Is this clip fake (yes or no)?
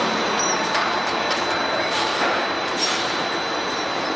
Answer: yes